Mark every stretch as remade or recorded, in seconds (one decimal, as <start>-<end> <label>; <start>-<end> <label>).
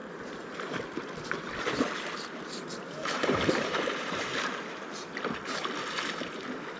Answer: 0.0-3.0 recorded; 3.0-5.2 remade; 5.2-6.8 recorded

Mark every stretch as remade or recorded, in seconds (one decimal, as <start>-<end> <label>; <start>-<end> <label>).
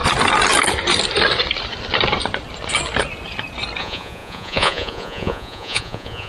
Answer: 0.0-3.8 recorded; 3.8-6.3 remade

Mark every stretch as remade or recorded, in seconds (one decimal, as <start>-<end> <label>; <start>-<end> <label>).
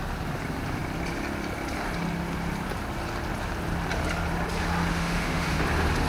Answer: 0.0-4.9 recorded; 4.9-5.6 remade; 5.6-6.1 recorded